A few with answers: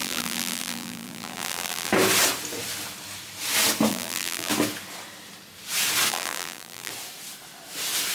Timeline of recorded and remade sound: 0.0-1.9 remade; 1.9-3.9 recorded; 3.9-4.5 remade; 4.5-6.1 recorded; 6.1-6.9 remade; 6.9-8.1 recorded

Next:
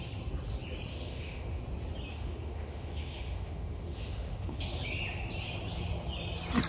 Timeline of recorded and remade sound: 0.0-0.9 recorded; 0.9-1.6 remade; 1.6-2.1 recorded; 2.1-4.6 remade; 4.6-6.7 recorded

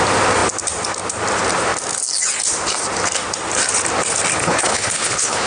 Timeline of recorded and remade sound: 0.0-4.4 recorded; 4.4-5.5 remade

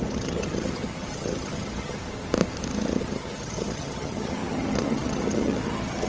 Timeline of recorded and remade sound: 0.0-2.0 remade; 2.0-3.0 recorded; 3.0-6.1 remade

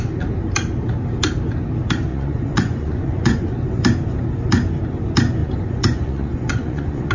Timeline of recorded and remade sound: 0.0-2.1 recorded; 2.1-3.5 remade; 3.5-5.4 recorded; 5.4-7.1 remade